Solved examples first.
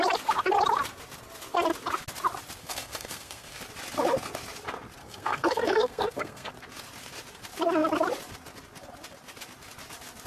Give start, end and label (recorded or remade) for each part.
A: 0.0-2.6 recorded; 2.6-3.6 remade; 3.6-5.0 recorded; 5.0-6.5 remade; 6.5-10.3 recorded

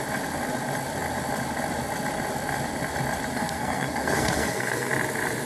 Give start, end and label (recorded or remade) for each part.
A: 0.0-3.3 recorded; 3.3-4.9 remade; 4.9-5.5 recorded

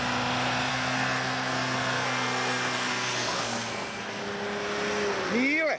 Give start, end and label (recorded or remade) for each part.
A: 0.0-0.7 recorded; 0.7-4.2 remade; 4.2-5.8 recorded

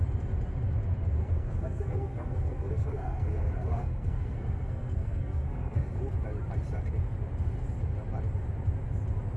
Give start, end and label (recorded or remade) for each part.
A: 0.0-1.2 recorded; 1.2-6.0 remade; 6.0-9.4 recorded

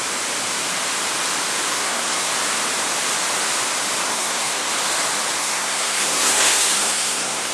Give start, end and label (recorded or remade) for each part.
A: 0.0-1.7 recorded; 1.7-2.3 remade; 2.3-4.1 recorded; 4.1-4.7 remade; 4.7-5.4 recorded; 5.4-7.5 remade

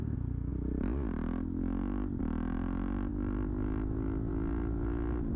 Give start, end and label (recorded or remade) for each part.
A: 0.0-5.4 recorded